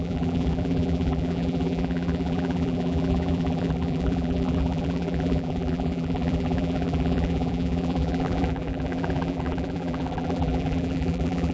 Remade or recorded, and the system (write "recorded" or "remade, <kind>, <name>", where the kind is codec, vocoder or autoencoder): remade, vocoder, BigVGAN v2